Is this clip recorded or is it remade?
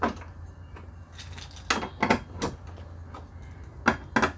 recorded